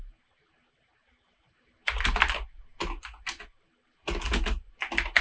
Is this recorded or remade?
recorded